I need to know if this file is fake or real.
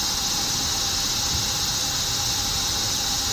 real